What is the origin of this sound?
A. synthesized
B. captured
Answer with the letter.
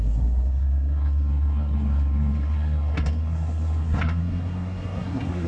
A